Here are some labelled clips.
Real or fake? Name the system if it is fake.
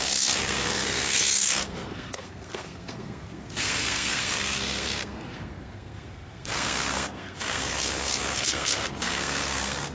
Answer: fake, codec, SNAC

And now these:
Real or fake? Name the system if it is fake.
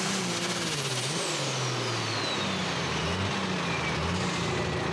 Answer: real